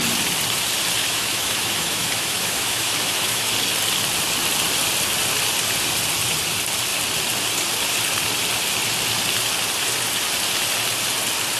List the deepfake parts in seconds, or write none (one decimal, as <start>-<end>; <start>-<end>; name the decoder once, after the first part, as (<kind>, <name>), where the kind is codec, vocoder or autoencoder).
1.0-3.5 (autoencoder, DAC-VAE)